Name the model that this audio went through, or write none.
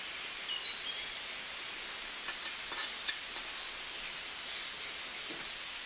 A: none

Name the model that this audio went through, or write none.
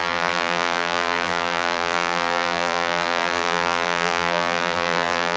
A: vocoder, BigVGAN v2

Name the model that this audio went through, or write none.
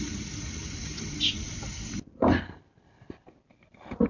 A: vocoder, BigVGAN v2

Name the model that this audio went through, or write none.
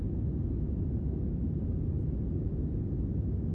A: none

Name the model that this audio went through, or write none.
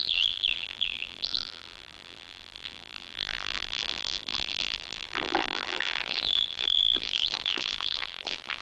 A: vocoder, BigVGAN v2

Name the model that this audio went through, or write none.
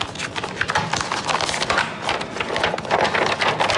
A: none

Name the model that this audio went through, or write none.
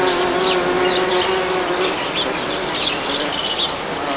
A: none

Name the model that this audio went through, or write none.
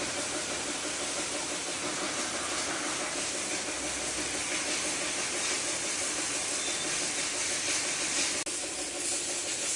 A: none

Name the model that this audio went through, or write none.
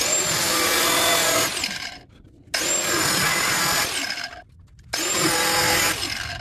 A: none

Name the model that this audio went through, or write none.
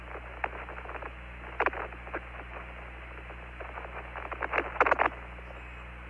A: none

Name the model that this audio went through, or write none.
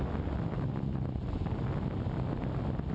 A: none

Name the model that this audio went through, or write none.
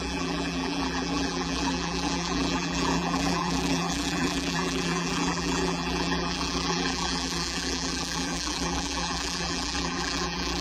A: vocoder, BigVGAN v2